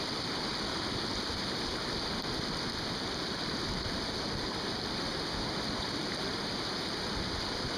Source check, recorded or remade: recorded